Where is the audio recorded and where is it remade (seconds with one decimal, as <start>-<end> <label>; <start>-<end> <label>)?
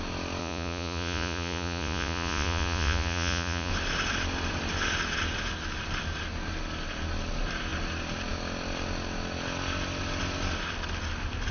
0.0-0.4 recorded; 0.4-3.7 remade; 3.7-11.5 recorded